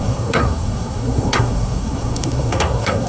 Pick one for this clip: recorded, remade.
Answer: remade